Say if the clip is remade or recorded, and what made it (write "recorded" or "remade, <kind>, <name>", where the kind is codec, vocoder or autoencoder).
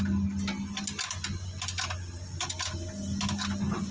recorded